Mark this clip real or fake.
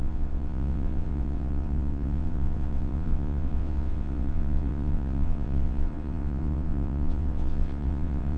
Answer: fake